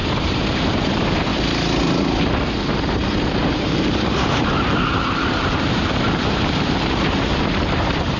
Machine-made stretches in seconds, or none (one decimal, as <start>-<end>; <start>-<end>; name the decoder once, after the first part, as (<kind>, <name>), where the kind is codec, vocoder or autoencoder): 0.0-1.3 (vocoder, BigVGAN v2); 3.5-8.2